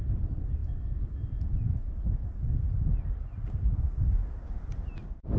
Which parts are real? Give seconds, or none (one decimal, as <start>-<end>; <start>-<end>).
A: 0.0-5.4